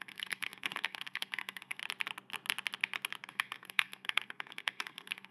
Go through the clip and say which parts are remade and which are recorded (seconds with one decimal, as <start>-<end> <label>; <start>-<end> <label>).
0.0-1.8 remade; 1.8-3.3 recorded; 3.3-5.3 remade